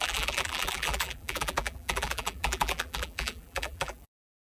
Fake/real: fake